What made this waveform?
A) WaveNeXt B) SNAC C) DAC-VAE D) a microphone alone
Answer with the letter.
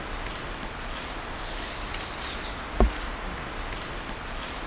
D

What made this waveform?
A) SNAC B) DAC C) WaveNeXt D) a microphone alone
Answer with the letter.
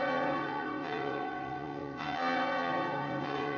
C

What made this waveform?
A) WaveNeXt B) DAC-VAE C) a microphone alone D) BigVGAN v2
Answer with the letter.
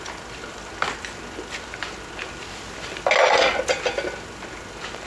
C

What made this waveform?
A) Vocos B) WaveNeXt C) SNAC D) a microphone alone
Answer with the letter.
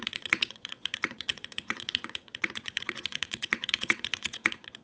B